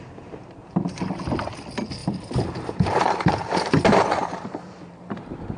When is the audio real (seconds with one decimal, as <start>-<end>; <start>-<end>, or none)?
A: 0.0-0.6; 1.2-2.0